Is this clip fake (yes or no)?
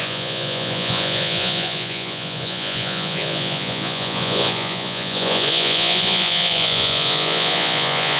yes